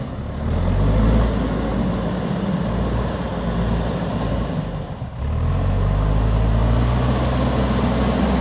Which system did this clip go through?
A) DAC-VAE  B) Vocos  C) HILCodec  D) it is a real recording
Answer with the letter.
D